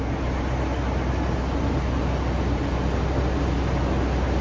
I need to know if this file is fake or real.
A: real